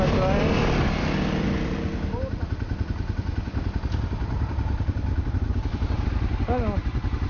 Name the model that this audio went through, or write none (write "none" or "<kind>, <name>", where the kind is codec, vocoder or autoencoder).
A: none